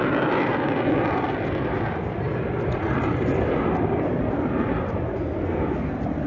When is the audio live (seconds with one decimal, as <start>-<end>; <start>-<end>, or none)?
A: 0.0-6.3